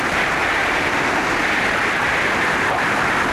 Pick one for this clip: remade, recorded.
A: recorded